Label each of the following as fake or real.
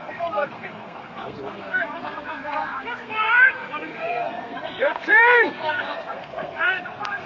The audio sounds fake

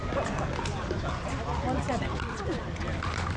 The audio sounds real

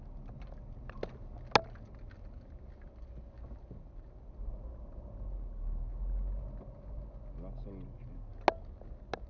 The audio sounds real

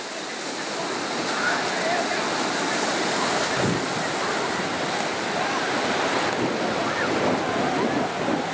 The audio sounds real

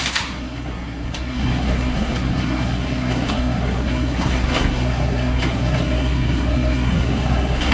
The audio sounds fake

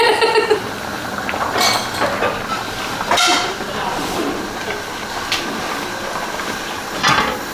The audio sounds fake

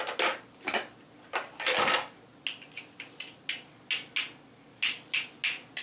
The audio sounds real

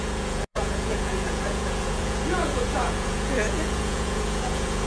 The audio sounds fake